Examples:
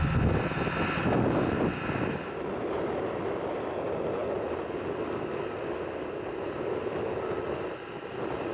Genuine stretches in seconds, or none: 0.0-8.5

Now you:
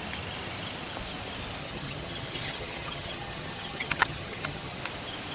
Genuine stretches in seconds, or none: 0.0-1.6; 4.8-5.3

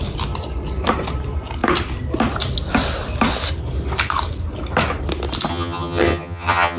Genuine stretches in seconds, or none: 0.0-5.5

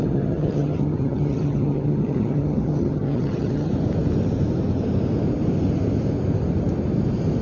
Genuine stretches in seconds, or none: 3.7-7.4

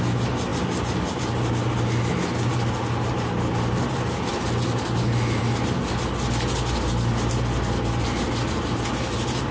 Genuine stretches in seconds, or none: 0.0-9.5

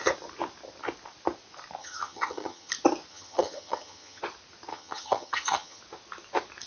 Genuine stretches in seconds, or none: 0.0-1.8; 2.7-3.1; 4.2-4.7; 5.8-6.7

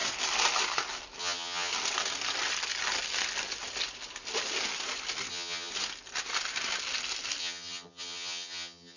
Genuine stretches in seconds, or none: 0.0-1.2; 1.7-5.3; 5.7-7.4

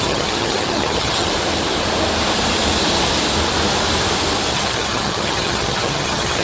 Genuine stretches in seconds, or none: 1.3-4.5